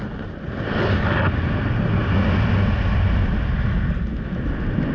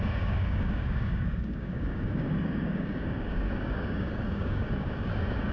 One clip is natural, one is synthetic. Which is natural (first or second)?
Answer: first